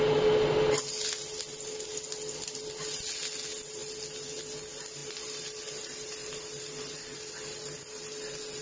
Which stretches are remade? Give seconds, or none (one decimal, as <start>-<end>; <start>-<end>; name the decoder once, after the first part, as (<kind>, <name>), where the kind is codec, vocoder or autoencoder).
1.2-1.8 (vocoder, BigVGAN v2); 5.0-8.0